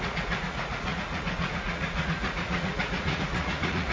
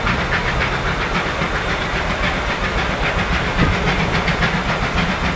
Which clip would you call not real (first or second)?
first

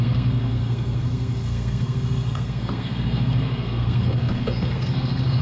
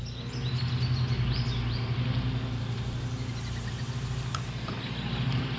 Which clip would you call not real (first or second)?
first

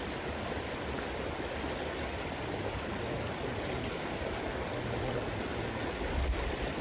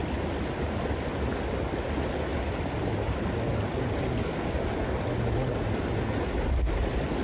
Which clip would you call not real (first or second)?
first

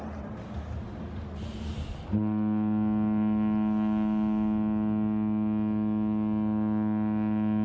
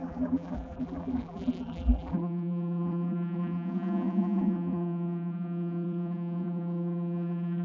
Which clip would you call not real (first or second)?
second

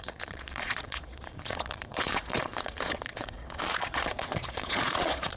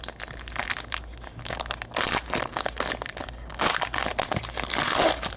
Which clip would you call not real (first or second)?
first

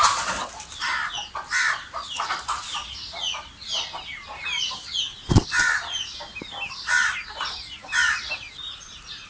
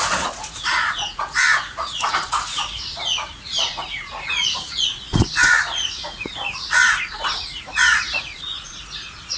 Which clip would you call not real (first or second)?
second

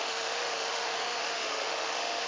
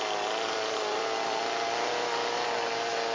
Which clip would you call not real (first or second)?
first